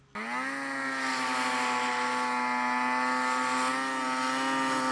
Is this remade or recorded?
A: recorded